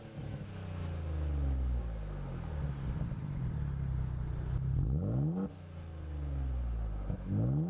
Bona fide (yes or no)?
yes